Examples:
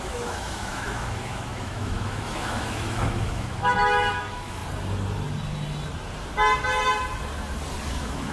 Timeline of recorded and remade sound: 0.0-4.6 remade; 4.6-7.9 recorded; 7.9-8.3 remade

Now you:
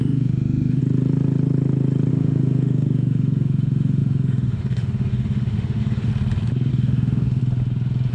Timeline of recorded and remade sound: 0.0-0.8 remade; 0.8-2.1 recorded; 2.1-6.1 remade; 6.1-6.7 recorded; 6.7-7.4 remade; 7.4-8.1 recorded

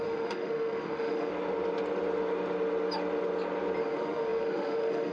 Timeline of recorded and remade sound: 0.0-1.3 remade; 1.3-3.8 recorded; 3.8-5.1 remade

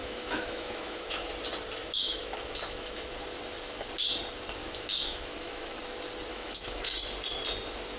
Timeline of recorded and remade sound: 0.0-1.3 remade; 1.3-1.8 recorded; 1.8-3.1 remade; 3.1-4.6 recorded; 4.6-5.8 remade; 5.8-6.3 recorded; 6.3-6.9 remade; 6.9-8.0 recorded

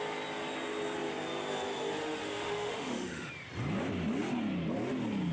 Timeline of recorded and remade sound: 0.0-2.0 recorded; 2.0-3.3 remade; 3.3-5.3 recorded

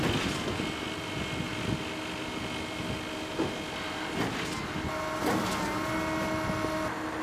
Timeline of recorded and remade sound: 0.0-7.2 recorded

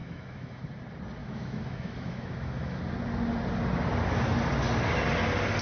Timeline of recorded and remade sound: 0.0-0.6 remade; 0.6-1.2 recorded; 1.2-2.8 remade; 2.8-5.6 recorded

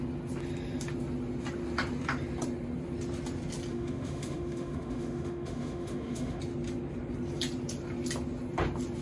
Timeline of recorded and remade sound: 0.0-3.7 recorded; 3.7-6.4 remade; 6.4-9.0 recorded